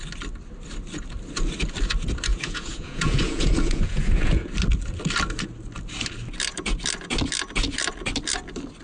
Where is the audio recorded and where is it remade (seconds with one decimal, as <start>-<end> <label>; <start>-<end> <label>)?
0.0-2.3 recorded; 2.3-4.5 remade; 4.5-8.8 recorded